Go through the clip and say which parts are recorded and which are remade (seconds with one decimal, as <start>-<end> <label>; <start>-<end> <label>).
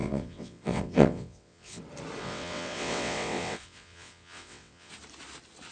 0.0-1.8 remade; 1.8-2.2 recorded; 2.2-4.9 remade; 4.9-5.7 recorded